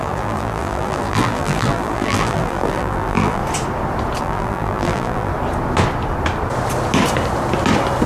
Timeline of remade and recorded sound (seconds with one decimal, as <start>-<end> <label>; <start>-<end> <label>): 0.0-3.4 remade; 3.4-4.2 recorded; 4.2-5.3 remade; 5.3-8.1 recorded